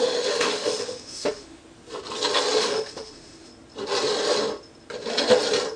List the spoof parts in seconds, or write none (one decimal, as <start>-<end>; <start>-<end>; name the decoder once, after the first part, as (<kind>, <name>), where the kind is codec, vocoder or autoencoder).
0.0-1.6 (autoencoder, DAC-VAE); 2.6-3.5